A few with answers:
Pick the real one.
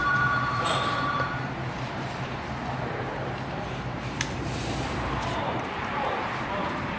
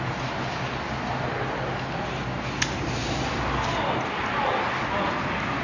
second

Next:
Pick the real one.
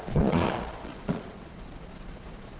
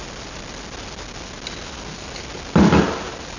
second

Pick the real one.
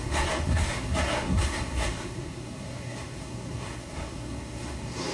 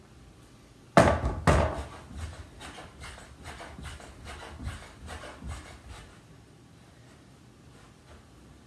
second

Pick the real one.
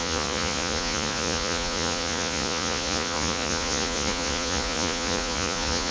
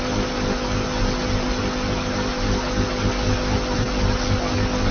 second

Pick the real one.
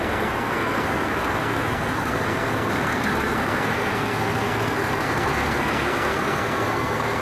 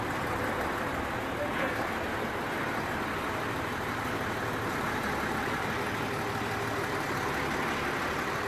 second